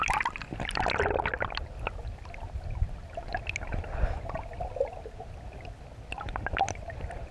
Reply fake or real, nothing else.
real